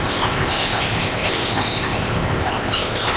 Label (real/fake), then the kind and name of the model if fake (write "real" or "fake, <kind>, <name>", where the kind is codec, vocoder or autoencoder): fake, codec, ZipCodec